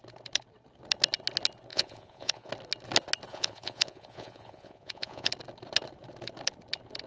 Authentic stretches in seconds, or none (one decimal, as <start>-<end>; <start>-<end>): 0.0-1.7; 2.5-3.3; 5.3-7.1